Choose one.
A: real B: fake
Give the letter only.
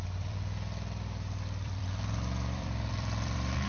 B